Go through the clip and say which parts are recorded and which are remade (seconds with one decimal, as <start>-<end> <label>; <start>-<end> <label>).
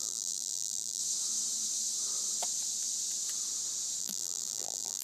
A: 0.0-1.0 remade; 1.0-4.0 recorded; 4.0-5.0 remade